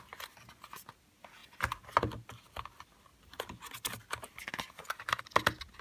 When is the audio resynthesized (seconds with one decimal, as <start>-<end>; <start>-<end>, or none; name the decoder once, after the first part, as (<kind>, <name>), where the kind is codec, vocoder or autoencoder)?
none